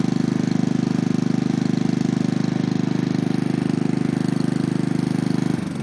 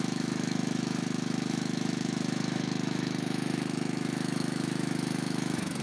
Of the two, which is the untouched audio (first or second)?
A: first